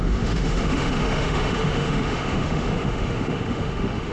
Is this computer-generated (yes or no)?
yes